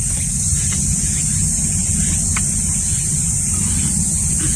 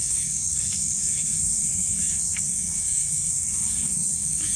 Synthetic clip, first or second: second